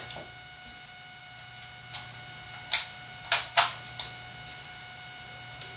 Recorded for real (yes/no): yes